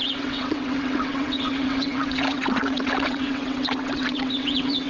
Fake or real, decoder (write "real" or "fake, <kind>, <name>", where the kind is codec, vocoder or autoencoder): fake, vocoder, WaveNeXt